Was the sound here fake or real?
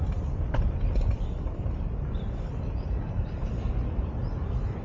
fake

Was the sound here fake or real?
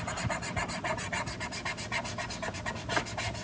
real